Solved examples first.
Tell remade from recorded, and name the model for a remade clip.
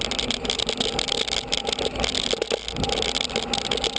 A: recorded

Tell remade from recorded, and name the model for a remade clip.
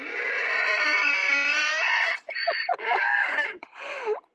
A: remade, vocoder, Vocos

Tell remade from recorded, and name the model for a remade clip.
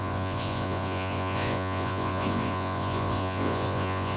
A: remade, vocoder, Vocos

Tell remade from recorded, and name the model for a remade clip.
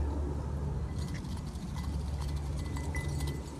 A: recorded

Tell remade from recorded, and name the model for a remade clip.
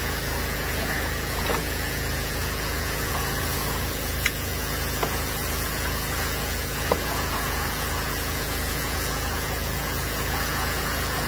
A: remade, vocoder, Vocos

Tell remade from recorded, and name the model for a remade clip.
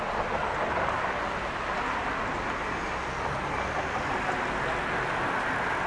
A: recorded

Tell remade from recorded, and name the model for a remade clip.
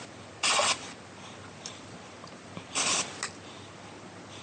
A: recorded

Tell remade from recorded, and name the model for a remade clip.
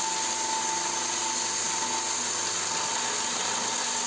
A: recorded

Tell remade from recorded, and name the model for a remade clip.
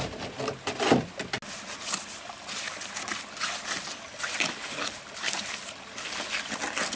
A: recorded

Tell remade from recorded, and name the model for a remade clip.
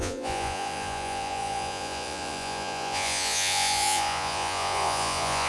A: remade, vocoder, Vocos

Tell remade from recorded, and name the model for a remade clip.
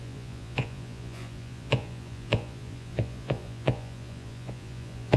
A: remade, vocoder, Vocos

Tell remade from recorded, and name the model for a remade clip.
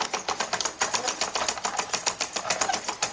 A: recorded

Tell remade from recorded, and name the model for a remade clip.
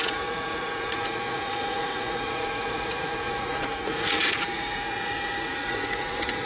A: remade, vocoder, Vocos